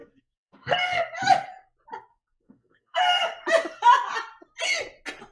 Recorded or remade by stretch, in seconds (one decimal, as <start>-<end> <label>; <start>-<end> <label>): 0.0-1.0 remade; 1.0-2.1 recorded; 2.1-3.0 remade; 3.0-5.3 recorded